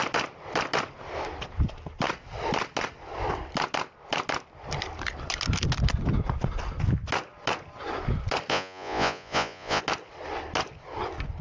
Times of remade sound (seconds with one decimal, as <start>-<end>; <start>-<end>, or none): 8.5-9.8